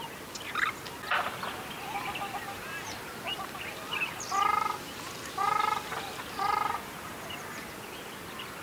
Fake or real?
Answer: real